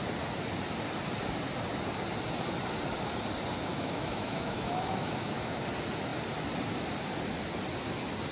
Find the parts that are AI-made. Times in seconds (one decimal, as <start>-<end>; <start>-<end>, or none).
3.7-5.6